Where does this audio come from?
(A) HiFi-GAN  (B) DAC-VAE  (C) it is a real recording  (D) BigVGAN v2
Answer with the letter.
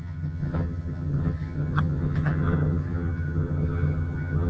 A